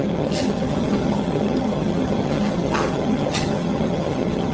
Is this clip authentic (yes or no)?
no